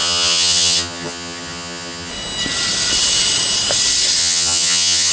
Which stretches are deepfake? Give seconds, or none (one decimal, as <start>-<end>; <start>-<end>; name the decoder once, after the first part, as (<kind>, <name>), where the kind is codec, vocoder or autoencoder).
0.0-2.1 (vocoder, HiFi-GAN); 4.2-5.1

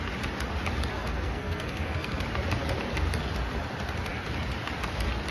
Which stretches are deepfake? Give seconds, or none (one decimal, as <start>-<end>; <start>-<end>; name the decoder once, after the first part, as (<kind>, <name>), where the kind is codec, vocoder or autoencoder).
0.9-2.2 (codec, SNAC)

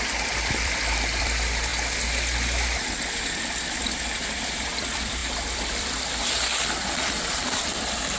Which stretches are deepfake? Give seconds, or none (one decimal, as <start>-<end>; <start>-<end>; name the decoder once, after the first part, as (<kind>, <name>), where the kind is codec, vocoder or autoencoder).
0.0-1.7 (vocoder, BigVGAN v2); 3.2-8.2

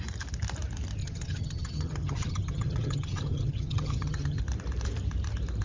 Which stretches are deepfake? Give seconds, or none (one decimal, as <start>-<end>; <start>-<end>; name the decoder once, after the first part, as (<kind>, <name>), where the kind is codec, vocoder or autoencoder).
1.0-4.4 (vocoder, HiFi-GAN)

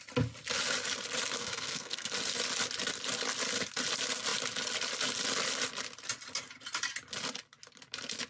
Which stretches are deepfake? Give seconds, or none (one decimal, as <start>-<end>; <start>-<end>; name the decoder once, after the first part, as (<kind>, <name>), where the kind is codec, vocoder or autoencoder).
1.4-2.1 (codec, SNAC)

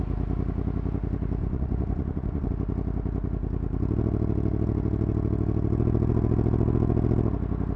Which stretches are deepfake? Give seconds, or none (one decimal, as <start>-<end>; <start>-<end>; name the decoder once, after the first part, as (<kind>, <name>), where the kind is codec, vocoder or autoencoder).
1.4-2.5 (vocoder, Vocos)

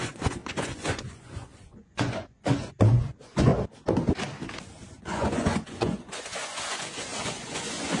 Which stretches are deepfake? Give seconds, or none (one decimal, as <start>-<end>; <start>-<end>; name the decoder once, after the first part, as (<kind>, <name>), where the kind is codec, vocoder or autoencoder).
0.0-3.5 (vocoder, Vocos); 5.0-8.0

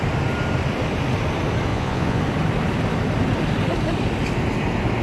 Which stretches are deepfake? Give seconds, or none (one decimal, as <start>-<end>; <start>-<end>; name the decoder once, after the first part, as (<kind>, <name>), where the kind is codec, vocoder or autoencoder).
1.7-2.2 (vocoder, Vocos)